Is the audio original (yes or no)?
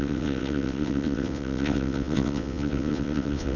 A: no